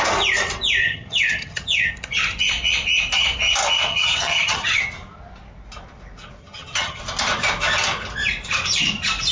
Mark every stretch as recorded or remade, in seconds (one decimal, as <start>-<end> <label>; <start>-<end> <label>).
0.0-0.8 recorded; 0.8-1.9 remade; 1.9-3.9 recorded; 3.9-4.8 remade; 4.8-6.4 recorded; 6.4-7.0 remade; 7.0-9.3 recorded